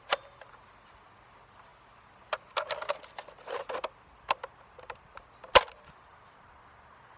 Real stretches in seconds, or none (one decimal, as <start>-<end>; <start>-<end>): 0.0-7.2